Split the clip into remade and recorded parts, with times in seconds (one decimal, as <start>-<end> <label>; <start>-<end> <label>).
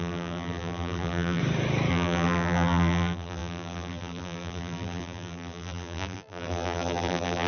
0.0-1.4 remade; 1.4-1.9 recorded; 1.9-7.5 remade